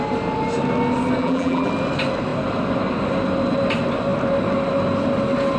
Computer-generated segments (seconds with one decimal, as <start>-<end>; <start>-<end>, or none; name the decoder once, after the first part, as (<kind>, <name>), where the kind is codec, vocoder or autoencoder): 1.2-1.7 (vocoder, BigVGAN v2)